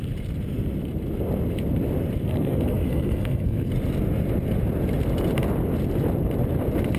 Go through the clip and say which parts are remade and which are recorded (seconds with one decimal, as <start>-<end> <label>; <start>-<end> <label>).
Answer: 0.0-2.3 recorded; 2.3-3.7 remade; 3.7-7.0 recorded